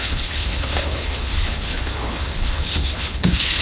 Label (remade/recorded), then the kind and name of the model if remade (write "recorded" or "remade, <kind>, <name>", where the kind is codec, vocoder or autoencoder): remade, codec, HILCodec